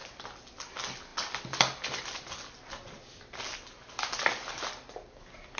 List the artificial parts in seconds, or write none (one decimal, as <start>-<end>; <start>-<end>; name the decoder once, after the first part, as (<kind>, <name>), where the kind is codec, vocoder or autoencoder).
none